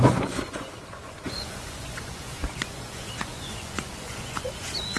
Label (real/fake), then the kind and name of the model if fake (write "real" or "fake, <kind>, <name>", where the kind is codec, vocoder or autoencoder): fake, vocoder, Vocos